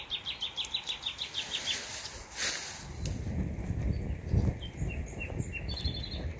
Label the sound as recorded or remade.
recorded